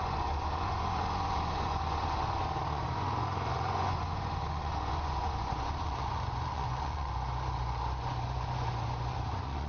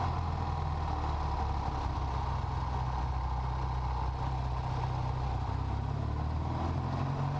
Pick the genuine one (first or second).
second